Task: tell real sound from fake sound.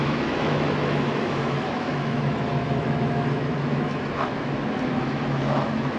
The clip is fake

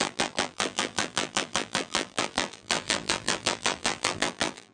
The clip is fake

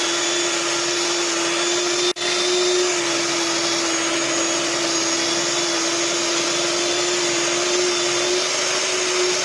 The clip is real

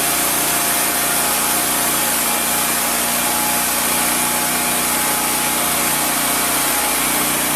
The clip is real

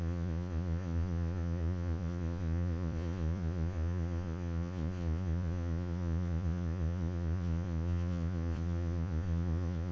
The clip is fake